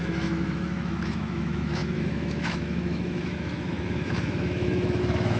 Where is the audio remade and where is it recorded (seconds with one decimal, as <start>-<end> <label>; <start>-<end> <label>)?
0.0-5.4 remade